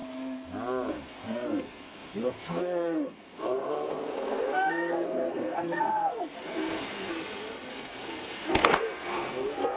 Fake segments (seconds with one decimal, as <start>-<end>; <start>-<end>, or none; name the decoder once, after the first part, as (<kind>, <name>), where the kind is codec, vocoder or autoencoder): 0.9-7.1 (codec, SNAC); 7.7-9.8